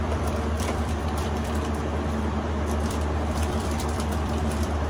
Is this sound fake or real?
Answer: fake